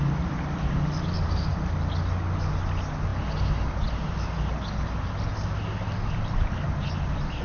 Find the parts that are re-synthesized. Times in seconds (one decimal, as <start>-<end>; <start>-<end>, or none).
none